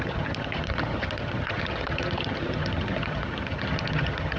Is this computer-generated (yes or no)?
yes